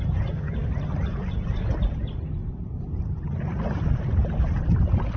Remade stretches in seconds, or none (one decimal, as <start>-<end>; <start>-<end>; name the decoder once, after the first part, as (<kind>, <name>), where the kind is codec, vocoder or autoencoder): none